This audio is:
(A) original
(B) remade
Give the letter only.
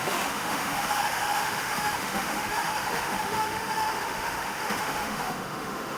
B